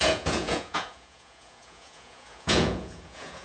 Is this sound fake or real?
fake